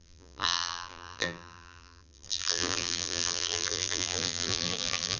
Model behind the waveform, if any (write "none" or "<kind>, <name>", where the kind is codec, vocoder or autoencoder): vocoder, BigVGAN v2